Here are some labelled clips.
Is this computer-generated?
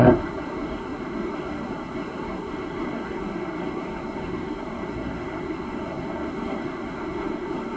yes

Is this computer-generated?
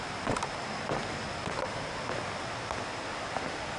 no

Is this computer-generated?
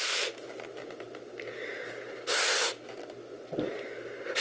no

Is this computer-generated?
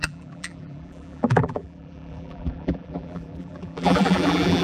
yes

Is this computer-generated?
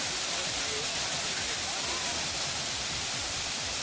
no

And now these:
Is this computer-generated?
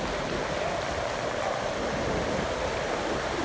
no